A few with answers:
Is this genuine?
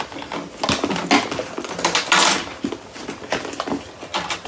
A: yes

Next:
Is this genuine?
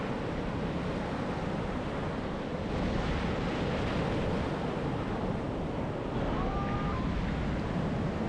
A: yes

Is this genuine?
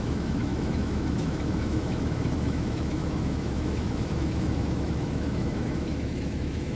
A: no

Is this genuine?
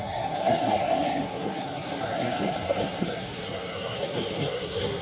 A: no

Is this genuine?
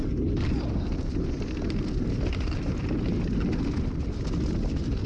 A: yes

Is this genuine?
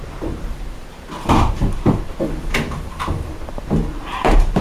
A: no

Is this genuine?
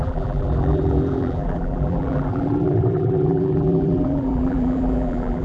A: no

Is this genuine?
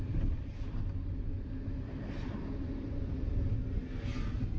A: yes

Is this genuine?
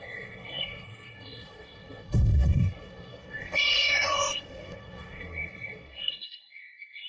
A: no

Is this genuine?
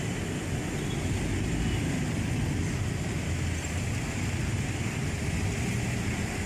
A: yes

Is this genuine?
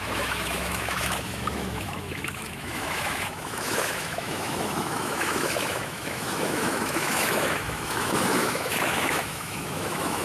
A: no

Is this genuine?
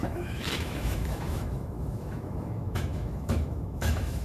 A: no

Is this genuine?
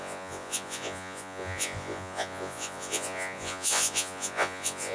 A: no